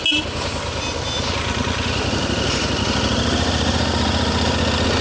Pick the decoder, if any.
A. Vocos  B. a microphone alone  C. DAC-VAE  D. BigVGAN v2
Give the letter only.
B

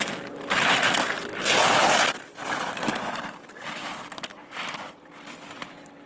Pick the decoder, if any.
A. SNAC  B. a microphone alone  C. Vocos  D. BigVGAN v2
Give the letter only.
B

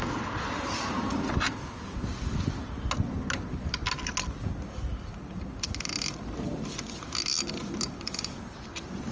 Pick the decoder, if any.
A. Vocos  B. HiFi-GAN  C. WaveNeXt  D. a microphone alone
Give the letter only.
D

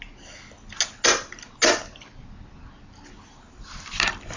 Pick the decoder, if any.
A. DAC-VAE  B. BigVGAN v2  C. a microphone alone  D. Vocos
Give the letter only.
C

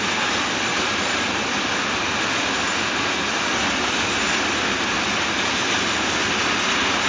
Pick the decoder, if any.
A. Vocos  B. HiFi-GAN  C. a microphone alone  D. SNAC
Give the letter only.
C